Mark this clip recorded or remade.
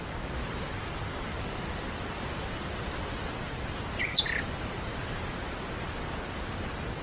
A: recorded